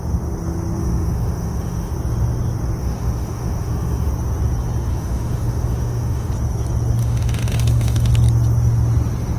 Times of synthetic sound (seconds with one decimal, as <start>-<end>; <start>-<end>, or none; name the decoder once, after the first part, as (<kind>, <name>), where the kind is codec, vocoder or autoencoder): 0.8-1.9 (autoencoder, DAC-VAE); 2.8-4.1; 4.9-6.3; 7.0-8.1